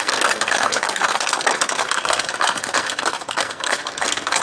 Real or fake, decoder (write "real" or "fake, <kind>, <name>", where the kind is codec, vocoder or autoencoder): fake, codec, SNAC